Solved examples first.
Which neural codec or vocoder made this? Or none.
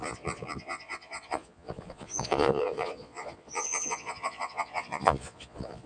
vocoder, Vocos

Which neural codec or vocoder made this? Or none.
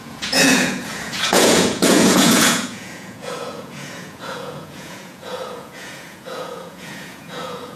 vocoder, Vocos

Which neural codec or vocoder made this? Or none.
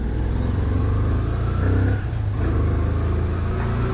none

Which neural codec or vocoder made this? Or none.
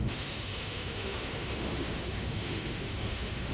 autoencoder, DAC-VAE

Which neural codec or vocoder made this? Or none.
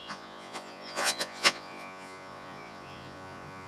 vocoder, Vocos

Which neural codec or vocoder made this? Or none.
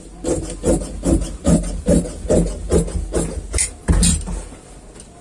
none